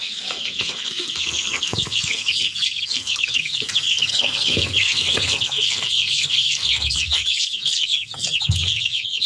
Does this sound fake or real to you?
fake